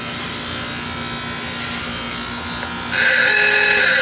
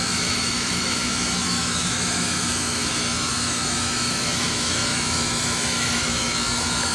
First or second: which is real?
first